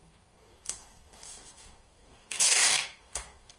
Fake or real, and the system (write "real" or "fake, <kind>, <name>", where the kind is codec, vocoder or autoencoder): fake, codec, DAC